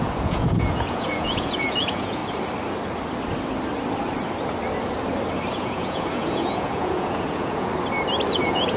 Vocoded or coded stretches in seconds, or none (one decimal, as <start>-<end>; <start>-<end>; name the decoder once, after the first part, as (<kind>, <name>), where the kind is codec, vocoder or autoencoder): 0.0-2.2 (vocoder, Vocos); 5.5-7.7; 8.3-8.8